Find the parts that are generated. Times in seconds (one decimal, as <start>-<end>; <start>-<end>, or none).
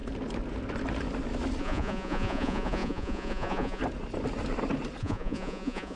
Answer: 1.6-3.8; 5.0-6.0